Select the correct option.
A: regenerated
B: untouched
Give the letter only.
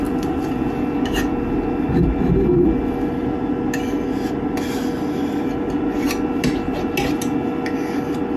B